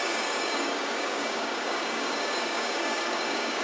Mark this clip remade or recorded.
remade